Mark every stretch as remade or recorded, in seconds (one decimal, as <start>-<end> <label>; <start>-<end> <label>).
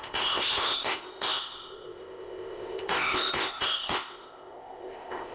0.0-5.3 remade